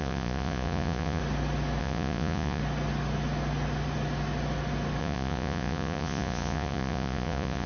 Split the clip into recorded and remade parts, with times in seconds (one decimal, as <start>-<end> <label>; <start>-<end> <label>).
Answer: 0.0-1.2 remade; 1.2-1.8 recorded; 1.8-2.6 remade; 2.6-5.0 recorded; 5.0-7.7 remade